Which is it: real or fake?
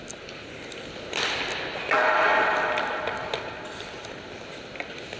real